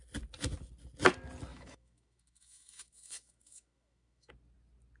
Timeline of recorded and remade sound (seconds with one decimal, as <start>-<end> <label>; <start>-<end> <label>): 0.0-1.5 recorded; 1.5-4.3 remade; 4.3-5.0 recorded